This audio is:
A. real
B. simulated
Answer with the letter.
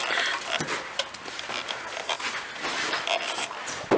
A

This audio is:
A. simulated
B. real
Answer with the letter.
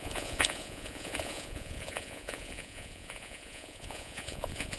A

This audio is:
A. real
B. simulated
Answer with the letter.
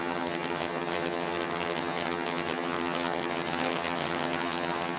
B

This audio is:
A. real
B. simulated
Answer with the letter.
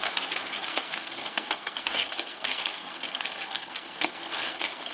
B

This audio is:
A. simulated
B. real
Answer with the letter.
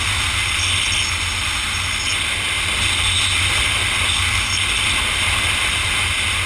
B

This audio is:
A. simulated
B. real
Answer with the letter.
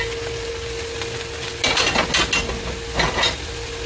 B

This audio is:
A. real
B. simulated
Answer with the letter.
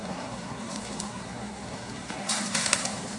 B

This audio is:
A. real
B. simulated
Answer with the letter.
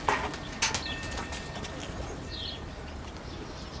A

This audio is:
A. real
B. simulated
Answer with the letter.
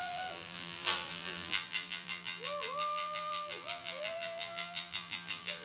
B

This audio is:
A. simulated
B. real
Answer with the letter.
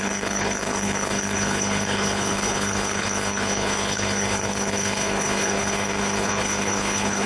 A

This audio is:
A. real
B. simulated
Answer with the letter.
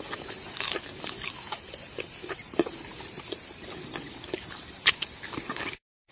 B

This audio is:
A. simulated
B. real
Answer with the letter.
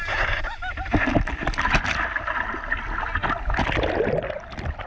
B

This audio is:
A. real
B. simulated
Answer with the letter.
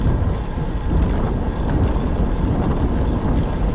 A